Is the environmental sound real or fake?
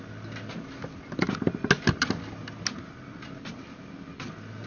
real